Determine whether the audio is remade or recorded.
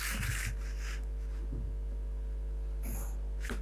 recorded